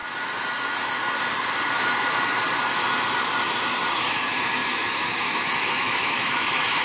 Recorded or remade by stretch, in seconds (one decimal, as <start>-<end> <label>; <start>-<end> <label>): 0.0-4.0 recorded; 4.0-6.8 remade